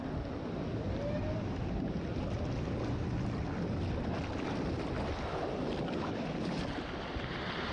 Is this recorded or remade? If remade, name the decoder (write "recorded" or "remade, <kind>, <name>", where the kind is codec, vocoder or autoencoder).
recorded